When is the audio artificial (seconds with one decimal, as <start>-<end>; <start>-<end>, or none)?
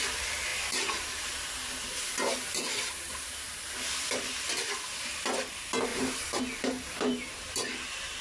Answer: 5.9-6.4; 6.9-7.7